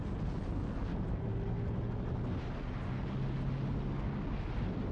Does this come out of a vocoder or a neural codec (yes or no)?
no